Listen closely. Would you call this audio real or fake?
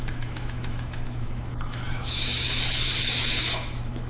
fake